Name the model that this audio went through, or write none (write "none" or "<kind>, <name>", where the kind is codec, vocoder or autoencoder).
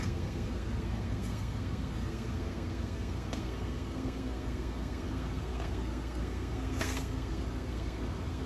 codec, SNAC